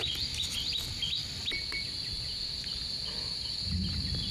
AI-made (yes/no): no